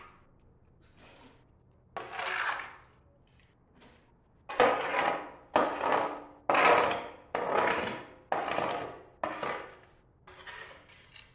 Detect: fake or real real